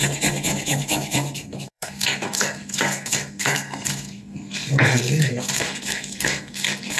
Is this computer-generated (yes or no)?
yes